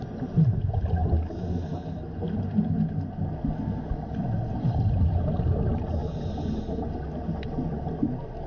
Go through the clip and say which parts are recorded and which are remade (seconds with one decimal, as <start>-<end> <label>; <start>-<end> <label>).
0.0-8.5 recorded